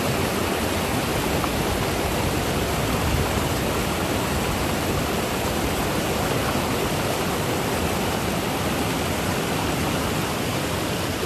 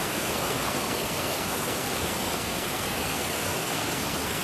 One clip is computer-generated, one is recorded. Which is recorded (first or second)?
first